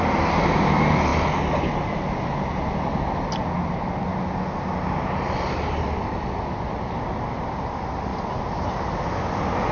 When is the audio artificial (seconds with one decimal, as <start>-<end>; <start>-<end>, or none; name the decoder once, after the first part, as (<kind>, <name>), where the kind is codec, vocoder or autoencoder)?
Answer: none